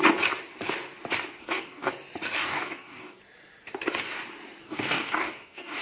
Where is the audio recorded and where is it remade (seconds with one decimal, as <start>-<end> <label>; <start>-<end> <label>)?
0.0-1.4 recorded; 1.4-1.9 remade; 1.9-2.4 recorded; 2.4-3.2 remade; 3.2-4.6 recorded; 4.6-5.8 remade

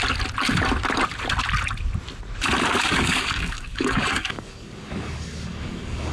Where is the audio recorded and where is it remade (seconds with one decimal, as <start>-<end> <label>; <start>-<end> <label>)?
0.0-2.8 recorded; 2.8-6.1 remade